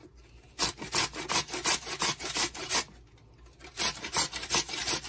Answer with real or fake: real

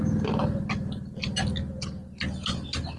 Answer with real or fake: real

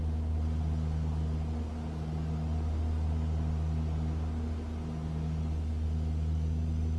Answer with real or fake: real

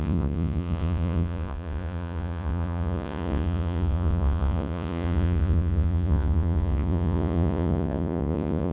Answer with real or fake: fake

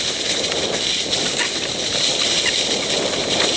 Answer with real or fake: real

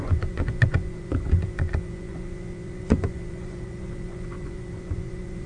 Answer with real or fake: fake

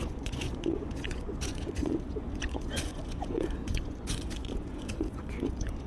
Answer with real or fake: fake